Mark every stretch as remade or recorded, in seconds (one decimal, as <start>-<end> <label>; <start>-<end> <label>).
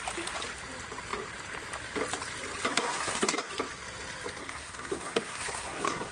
0.0-2.7 recorded; 2.7-3.5 remade; 3.5-4.4 recorded; 4.4-6.1 remade